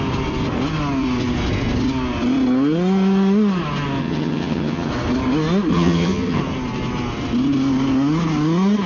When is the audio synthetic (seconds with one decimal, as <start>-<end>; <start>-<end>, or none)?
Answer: 4.0-4.9; 5.7-6.4